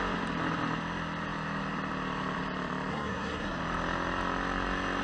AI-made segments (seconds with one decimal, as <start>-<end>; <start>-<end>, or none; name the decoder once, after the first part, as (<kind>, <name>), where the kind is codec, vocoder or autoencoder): 2.9-3.6 (codec, SNAC)